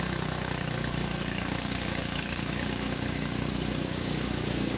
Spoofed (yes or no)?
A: yes